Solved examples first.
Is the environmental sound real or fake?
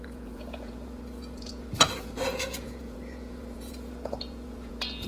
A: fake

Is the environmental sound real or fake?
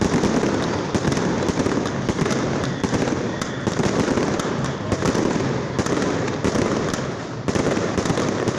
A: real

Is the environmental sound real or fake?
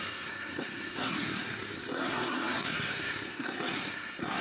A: fake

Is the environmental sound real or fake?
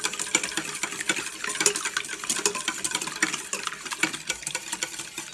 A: real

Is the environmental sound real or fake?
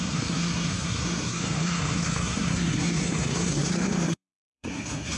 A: fake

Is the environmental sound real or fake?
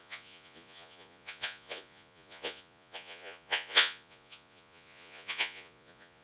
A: fake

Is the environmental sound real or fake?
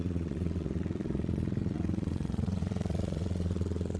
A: fake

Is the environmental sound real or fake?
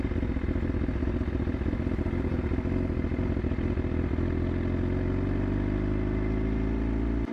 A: real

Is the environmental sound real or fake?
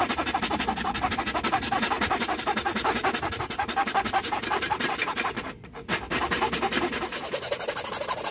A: real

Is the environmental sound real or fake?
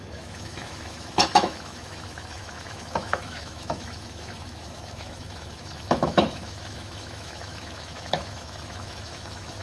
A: fake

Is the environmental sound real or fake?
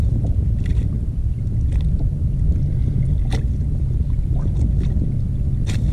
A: real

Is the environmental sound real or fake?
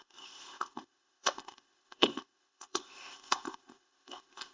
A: fake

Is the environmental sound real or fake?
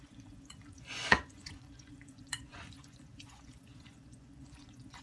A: fake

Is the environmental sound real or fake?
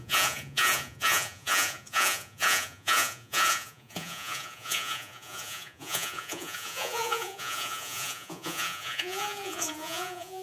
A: fake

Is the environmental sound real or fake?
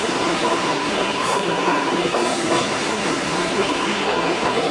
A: fake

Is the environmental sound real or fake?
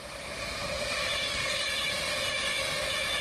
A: real